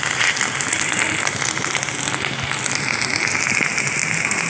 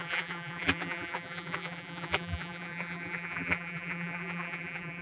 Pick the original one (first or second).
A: first